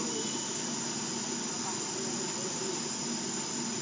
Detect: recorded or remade recorded